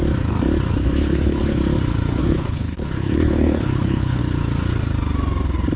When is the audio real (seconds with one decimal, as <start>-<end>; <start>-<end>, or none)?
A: 0.0-0.8; 1.6-2.2; 4.2-5.8